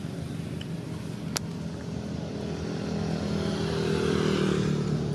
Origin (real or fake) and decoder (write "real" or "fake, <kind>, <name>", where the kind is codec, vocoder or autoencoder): real